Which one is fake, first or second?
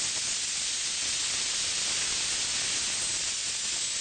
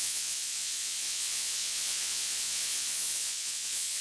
second